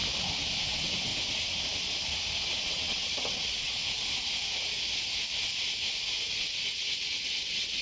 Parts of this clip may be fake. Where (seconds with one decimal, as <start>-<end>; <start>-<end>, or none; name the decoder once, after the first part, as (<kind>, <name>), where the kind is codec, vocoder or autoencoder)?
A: 0.6-1.1 (vocoder, WaveNeXt); 2.6-3.8; 6.3-7.8